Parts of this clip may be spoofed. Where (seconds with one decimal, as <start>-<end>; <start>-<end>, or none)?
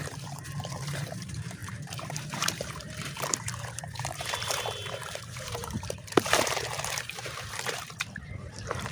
0.0-8.9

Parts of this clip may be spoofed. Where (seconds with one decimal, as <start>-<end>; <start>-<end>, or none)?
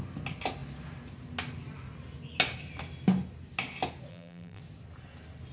4.1-4.6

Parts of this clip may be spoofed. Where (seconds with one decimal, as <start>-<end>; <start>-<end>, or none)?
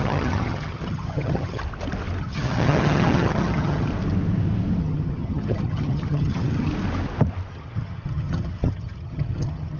0.0-1.6; 2.2-3.9; 4.8-6.7; 7.5-9.8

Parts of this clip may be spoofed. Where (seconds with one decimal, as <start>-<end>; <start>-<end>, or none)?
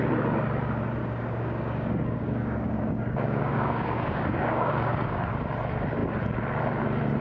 1.0-5.3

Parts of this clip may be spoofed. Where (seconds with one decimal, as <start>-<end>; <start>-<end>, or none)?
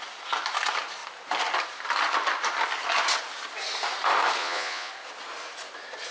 4.4-4.9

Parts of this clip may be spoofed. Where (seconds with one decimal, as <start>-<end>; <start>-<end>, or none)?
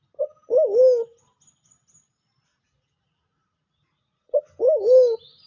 2.5-4.5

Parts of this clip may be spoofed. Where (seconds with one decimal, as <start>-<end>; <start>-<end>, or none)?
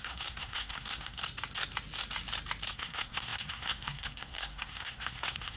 0.0-1.2; 2.7-5.6